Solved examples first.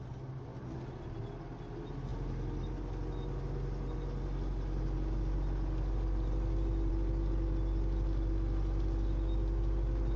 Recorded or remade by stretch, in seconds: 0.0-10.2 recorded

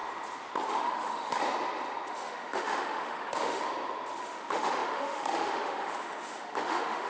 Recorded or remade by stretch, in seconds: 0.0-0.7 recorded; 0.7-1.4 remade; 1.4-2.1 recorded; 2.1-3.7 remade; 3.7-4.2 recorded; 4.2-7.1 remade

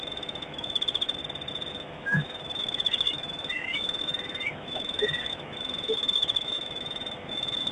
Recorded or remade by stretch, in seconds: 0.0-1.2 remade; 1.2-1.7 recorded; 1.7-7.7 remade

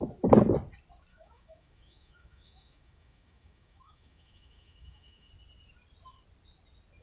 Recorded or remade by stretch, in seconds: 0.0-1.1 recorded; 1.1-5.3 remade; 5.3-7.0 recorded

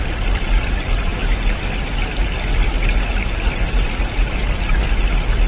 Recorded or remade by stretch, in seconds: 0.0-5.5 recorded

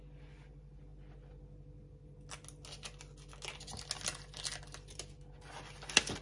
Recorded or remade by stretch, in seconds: 0.0-6.2 recorded

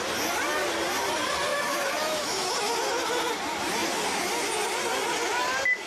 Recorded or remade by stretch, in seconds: 0.0-1.5 recorded; 1.5-2.5 remade; 2.5-5.9 recorded

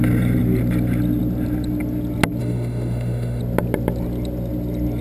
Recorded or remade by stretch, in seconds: 0.0-2.4 recorded; 2.4-3.4 remade; 3.4-5.0 recorded